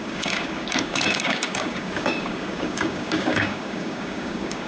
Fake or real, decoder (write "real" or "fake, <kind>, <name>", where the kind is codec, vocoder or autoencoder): fake, codec, DAC